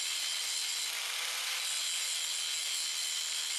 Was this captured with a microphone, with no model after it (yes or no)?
yes